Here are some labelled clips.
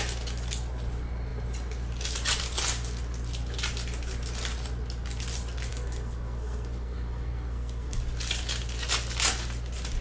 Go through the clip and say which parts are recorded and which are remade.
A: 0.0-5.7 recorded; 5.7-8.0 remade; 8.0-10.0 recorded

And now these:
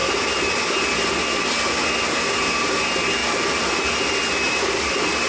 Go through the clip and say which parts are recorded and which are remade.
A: 0.0-5.3 recorded